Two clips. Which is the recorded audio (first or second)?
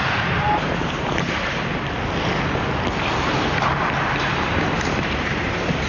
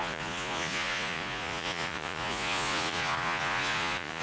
first